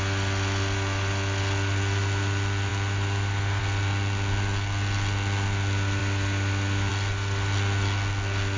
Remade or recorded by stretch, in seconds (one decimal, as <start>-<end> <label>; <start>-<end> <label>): 0.0-8.6 recorded